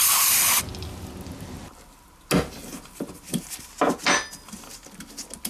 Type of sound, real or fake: real